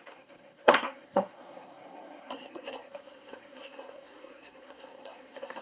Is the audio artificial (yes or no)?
yes